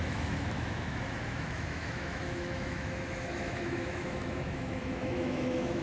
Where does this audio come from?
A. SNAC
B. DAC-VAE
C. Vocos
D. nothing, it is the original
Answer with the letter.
B